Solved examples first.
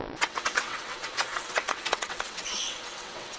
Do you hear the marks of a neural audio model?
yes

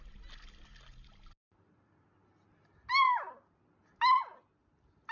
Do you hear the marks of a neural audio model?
no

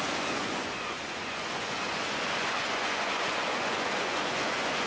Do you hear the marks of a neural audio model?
yes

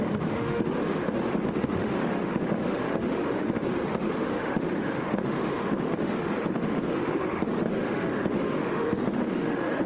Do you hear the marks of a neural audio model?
yes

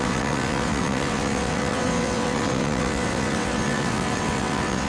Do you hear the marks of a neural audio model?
yes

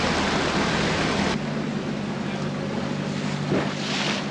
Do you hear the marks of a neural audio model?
no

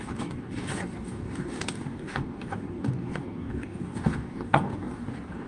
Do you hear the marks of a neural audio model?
yes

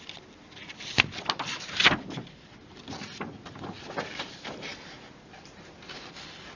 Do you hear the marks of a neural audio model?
no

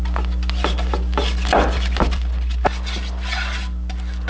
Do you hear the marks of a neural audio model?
no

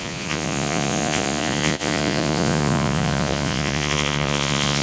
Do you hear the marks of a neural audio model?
yes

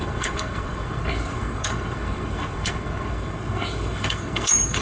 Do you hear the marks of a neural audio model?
yes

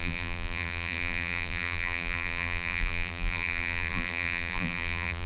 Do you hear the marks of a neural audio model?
yes